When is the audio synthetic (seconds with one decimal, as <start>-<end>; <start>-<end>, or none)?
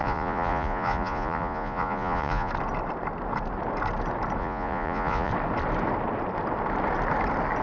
0.0-2.5; 4.4-5.3